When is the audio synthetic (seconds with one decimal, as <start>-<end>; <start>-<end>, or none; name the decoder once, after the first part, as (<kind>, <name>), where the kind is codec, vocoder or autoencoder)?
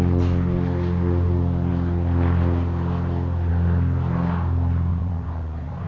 4.9-5.9 (vocoder, Vocos)